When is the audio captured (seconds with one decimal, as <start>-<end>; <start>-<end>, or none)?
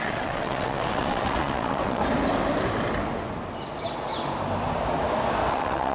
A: 2.0-5.5